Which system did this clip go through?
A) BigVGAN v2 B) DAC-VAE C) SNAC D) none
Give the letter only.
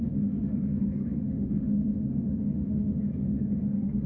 B